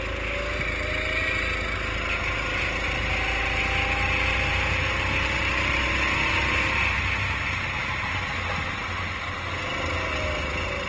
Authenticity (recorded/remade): recorded